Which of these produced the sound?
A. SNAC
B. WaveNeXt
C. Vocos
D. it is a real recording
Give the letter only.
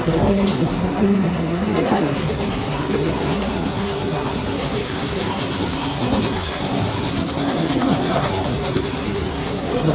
A